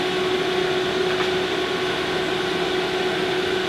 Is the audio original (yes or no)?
yes